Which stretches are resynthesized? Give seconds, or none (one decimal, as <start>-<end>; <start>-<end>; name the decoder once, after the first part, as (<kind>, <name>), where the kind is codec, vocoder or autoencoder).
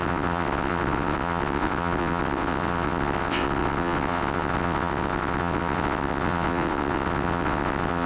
0.0-8.1 (vocoder, WaveNeXt)